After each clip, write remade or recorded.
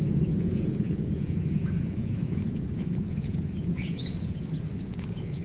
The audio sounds remade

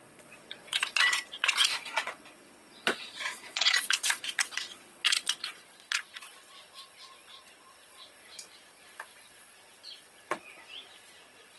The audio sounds remade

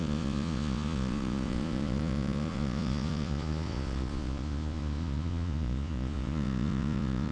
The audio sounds remade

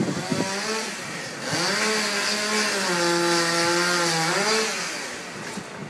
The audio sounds recorded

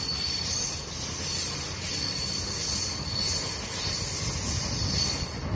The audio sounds recorded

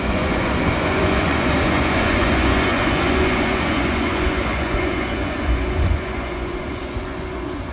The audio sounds remade